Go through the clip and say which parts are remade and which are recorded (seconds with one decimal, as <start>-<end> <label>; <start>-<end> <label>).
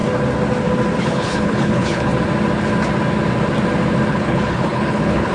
0.0-1.0 recorded; 1.0-2.1 remade; 2.1-4.1 recorded; 4.1-5.3 remade